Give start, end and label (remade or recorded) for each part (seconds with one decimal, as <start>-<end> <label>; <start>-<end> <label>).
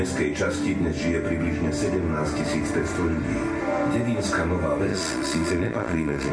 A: 0.0-4.9 recorded; 4.9-6.3 remade